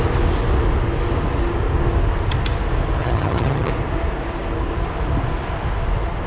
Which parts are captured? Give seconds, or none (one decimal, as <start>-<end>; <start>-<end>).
0.0-3.0; 3.7-6.3